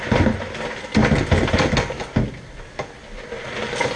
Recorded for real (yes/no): yes